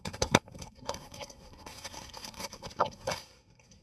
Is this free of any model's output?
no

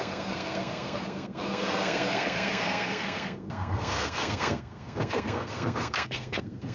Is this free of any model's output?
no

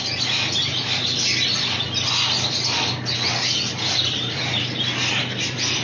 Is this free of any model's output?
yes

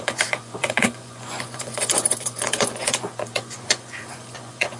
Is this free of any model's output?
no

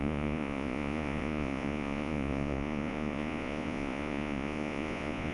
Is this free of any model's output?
no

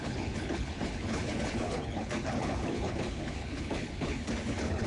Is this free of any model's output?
no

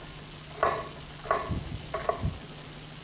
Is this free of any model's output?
yes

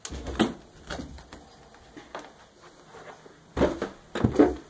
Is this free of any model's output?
yes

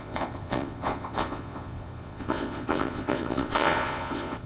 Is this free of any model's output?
no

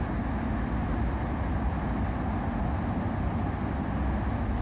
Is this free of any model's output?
yes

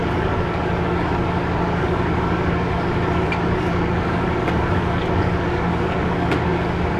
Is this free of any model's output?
no